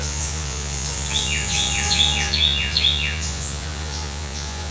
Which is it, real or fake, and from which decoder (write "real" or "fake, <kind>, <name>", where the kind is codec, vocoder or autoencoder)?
fake, vocoder, Vocos